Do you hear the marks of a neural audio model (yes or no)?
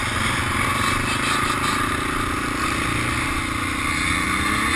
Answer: no